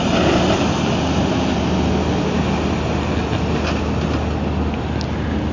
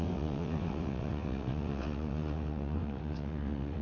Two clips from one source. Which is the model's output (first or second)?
second